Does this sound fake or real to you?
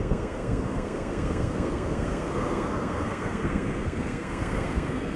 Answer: fake